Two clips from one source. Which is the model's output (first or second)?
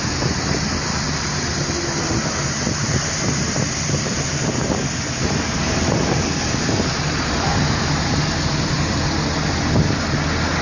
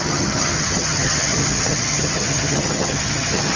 second